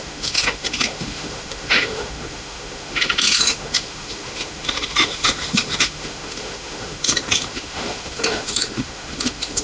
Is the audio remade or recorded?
remade